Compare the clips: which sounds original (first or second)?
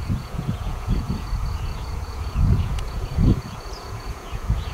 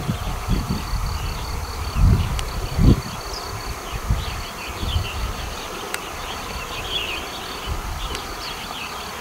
second